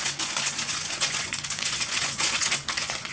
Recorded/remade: remade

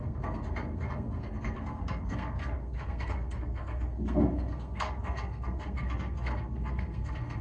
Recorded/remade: remade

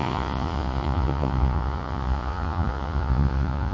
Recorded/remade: remade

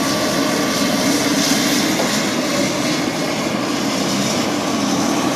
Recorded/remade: recorded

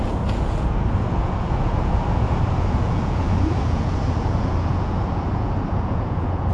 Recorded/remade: remade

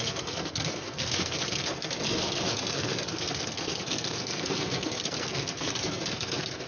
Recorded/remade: remade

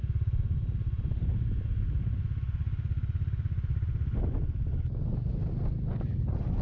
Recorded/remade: recorded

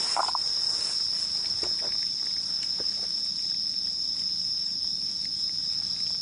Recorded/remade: recorded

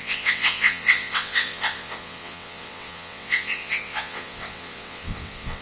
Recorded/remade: remade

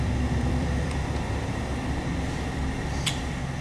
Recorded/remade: remade